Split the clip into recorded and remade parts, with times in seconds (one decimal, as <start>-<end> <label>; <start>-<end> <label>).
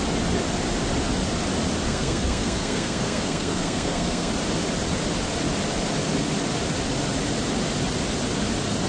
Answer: 0.0-1.9 recorded; 1.9-4.3 remade; 4.3-8.9 recorded